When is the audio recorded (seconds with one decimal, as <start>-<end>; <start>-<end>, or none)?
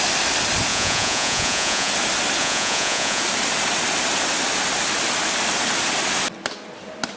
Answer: 0.0-0.7; 1.9-2.4; 3.2-7.2